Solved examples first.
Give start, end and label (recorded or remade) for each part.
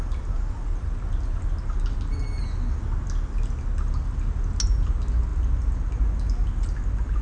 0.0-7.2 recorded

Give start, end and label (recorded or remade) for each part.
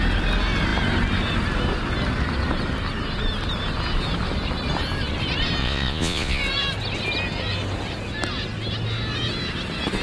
0.0-5.6 recorded; 5.6-6.4 remade; 6.4-10.0 recorded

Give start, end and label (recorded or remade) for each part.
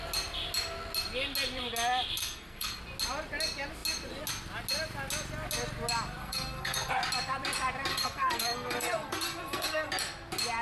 0.0-2.2 recorded; 2.2-2.8 remade; 2.8-6.2 recorded; 6.2-6.9 remade; 6.9-7.9 recorded; 7.9-9.9 remade; 9.9-10.6 recorded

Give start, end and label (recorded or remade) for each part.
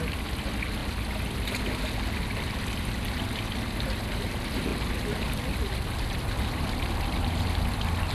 0.0-8.1 recorded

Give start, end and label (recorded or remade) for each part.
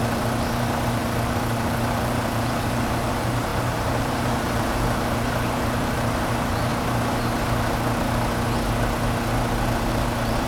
0.0-6.7 remade; 6.7-9.9 recorded; 9.9-10.5 remade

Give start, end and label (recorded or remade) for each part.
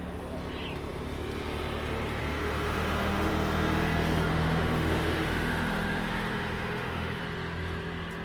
0.0-2.2 recorded; 2.2-3.3 remade; 3.3-4.3 recorded; 4.3-7.2 remade; 7.2-8.2 recorded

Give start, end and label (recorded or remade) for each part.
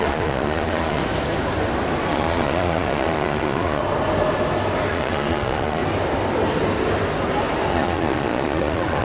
0.0-1.0 remade; 1.0-2.1 recorded; 2.1-3.8 remade; 3.8-4.9 recorded; 4.9-5.8 remade; 5.8-7.7 recorded; 7.7-9.0 remade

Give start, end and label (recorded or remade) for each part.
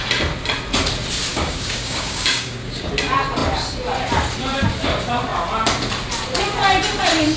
0.0-1.3 recorded; 1.3-2.9 remade; 2.9-7.4 recorded